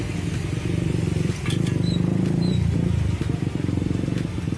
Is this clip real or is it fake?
real